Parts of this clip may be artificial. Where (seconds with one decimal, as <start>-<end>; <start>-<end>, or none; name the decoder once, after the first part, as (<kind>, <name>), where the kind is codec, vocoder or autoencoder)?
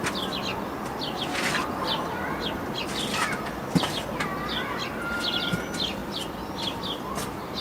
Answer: none